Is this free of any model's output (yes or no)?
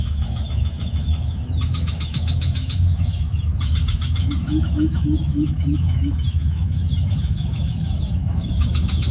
no